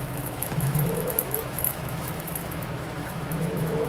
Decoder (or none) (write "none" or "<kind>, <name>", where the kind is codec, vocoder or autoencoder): autoencoder, DAC-VAE